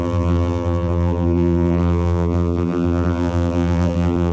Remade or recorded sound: remade